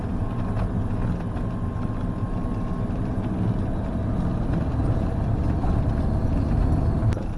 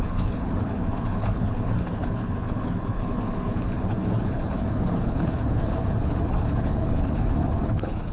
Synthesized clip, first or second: second